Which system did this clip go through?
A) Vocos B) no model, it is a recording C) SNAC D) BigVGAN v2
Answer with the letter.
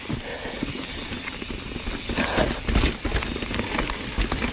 B